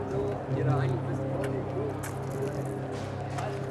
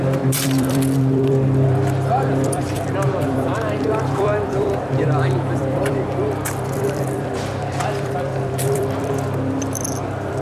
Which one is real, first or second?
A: first